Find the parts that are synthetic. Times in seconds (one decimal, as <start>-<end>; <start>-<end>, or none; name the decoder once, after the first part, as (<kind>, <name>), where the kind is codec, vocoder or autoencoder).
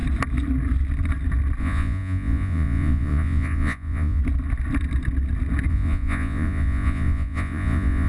1.6-4.2 (vocoder, Vocos); 5.7-8.1